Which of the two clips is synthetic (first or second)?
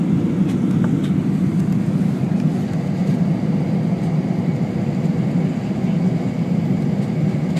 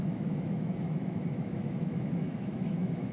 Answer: second